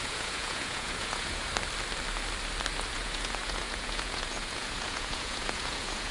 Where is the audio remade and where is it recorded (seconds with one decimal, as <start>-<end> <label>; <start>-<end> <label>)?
0.0-1.5 remade; 1.5-2.9 recorded; 2.9-6.1 remade